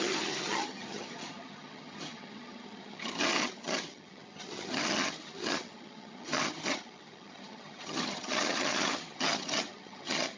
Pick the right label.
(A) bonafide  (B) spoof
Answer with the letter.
B